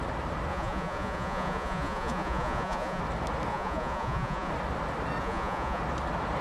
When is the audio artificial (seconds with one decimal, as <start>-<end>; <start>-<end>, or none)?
0.5-3.0; 3.5-4.5; 5.2-5.8